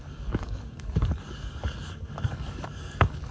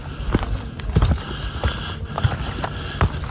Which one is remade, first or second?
first